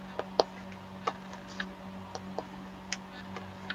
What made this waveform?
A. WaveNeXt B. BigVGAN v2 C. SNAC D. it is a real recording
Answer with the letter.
D